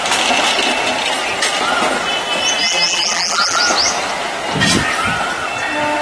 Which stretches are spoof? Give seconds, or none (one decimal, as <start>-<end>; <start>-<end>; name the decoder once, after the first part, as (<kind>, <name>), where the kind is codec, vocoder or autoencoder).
2.6-3.6 (vocoder, BigVGAN v2)

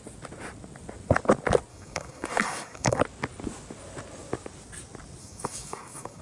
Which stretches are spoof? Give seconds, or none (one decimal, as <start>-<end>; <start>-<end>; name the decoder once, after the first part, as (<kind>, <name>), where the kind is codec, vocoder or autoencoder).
1.7-3.0 (codec, DAC); 5.2-6.2

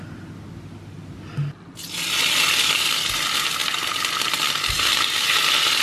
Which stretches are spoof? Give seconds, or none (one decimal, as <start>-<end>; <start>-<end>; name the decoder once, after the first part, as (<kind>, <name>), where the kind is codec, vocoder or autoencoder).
none

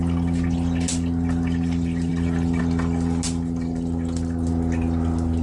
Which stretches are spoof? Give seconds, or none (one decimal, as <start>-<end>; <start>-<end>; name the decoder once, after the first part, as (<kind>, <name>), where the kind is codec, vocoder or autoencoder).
none

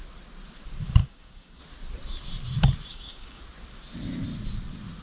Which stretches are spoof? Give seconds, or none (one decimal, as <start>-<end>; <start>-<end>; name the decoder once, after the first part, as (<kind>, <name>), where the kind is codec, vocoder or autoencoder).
1.0-1.6 (codec, DAC); 2.9-3.4